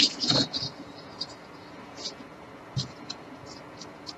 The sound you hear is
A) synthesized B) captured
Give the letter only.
A